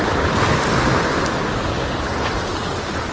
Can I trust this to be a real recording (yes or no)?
yes